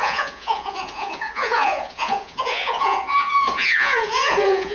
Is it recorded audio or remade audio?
remade